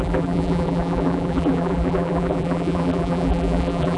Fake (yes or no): yes